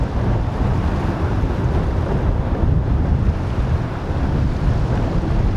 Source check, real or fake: fake